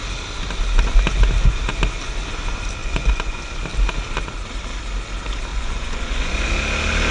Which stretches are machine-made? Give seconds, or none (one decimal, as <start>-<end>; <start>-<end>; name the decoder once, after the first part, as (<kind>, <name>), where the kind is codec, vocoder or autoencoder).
2.8-3.6 (vocoder, Vocos); 5.5-6.5